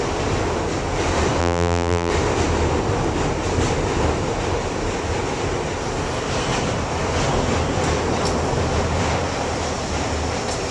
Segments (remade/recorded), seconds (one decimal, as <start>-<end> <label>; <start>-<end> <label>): 0.0-1.4 recorded; 1.4-2.1 remade; 2.1-10.7 recorded